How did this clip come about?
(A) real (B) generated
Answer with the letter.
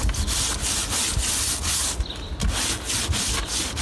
A